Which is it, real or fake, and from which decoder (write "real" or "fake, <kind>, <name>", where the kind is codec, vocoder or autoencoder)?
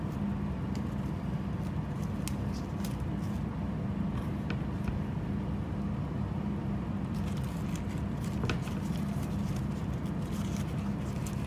real